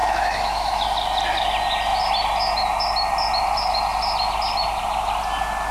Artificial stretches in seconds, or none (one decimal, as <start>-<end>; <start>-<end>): 0.0-0.8